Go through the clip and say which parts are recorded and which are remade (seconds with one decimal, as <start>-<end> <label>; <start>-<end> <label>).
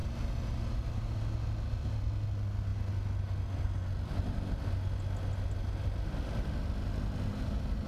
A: 0.0-7.9 recorded